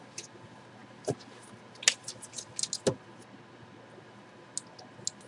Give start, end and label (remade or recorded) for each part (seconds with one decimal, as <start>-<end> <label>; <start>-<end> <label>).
0.0-5.3 recorded